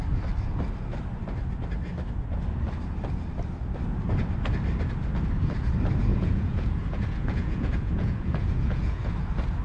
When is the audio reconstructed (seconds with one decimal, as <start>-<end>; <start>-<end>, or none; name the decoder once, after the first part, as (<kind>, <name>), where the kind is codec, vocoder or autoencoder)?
6.1-9.1 (vocoder, Vocos)